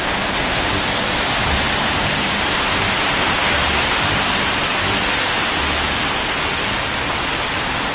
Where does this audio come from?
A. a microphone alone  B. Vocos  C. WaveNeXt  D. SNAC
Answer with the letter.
A